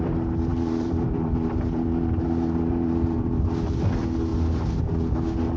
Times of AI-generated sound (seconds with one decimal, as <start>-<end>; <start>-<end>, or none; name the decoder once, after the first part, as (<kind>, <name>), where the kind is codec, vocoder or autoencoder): 0.5-3.9 (vocoder, BigVGAN v2)